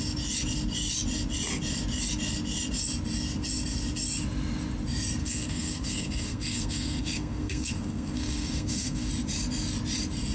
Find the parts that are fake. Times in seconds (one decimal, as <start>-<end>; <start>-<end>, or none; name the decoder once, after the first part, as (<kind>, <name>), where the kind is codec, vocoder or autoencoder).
5.2-9.1 (codec, SNAC)